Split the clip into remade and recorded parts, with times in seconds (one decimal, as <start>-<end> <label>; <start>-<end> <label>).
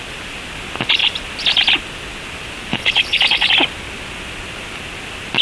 0.0-2.7 recorded; 2.7-3.5 remade; 3.5-5.4 recorded